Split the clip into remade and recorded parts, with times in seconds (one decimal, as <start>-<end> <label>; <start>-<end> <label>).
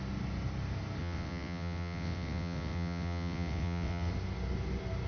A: 0.0-1.0 recorded; 1.0-4.1 remade; 4.1-5.1 recorded